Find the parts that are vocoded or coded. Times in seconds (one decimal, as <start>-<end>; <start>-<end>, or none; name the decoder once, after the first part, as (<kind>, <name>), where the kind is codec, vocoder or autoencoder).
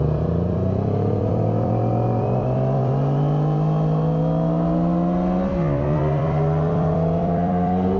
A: 0.0-2.9 (vocoder, BigVGAN v2); 6.0-8.0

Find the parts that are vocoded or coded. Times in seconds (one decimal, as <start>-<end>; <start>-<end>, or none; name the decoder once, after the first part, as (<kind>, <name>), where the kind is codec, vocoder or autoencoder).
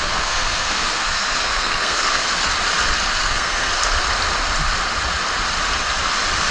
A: 0.0-2.3 (codec, SNAC); 3.3-3.7